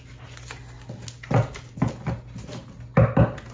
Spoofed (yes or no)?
no